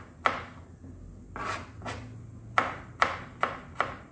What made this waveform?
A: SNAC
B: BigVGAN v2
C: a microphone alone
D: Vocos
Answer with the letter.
C